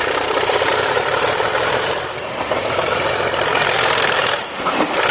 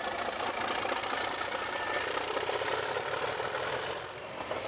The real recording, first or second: second